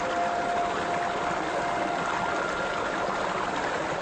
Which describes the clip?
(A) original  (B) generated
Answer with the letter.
A